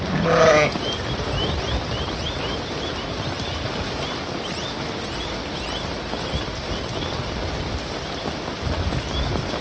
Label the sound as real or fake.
real